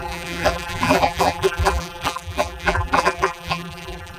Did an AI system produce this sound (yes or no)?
yes